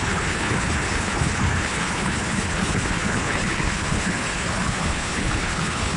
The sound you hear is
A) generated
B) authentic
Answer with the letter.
A